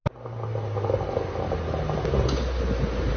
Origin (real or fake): real